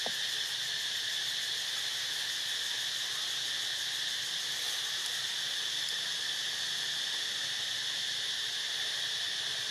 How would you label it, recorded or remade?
recorded